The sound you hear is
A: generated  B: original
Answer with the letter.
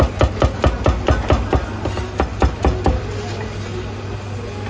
B